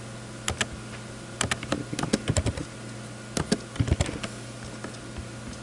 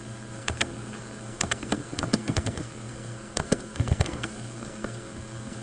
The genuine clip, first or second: first